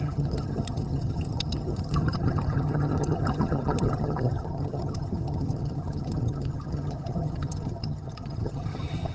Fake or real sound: fake